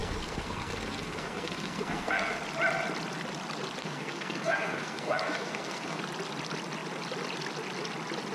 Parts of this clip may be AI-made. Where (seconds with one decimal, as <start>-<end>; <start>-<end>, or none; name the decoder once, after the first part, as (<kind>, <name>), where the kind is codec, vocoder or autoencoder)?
0.0-2.4 (codec, SNAC); 3.8-6.0